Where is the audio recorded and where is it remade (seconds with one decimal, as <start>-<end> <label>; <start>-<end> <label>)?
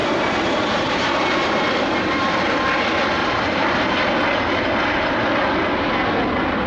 0.0-2.8 remade; 2.8-3.2 recorded; 3.2-4.0 remade; 4.0-6.7 recorded